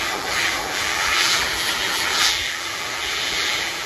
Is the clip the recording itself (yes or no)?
no